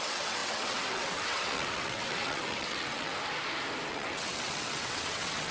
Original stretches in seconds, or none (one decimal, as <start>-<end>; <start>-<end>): 3.1-3.9